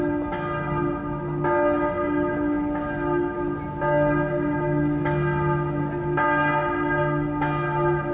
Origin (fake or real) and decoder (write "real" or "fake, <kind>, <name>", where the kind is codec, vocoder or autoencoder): real